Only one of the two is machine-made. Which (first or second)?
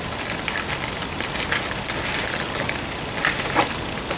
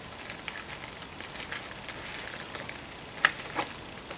first